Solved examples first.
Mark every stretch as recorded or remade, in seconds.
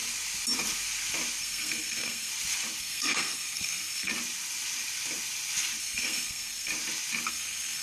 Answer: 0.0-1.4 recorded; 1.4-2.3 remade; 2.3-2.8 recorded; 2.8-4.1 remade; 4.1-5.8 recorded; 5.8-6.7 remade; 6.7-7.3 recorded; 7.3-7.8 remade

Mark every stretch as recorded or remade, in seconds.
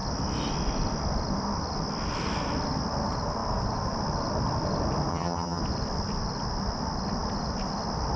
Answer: 0.0-5.1 recorded; 5.1-5.6 remade; 5.6-8.2 recorded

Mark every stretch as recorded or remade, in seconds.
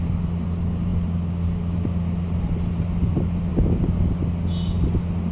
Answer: 0.0-5.3 recorded